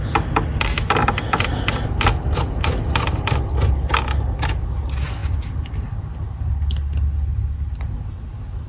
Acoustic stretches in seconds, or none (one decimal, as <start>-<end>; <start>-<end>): 0.0-8.7